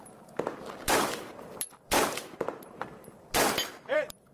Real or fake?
fake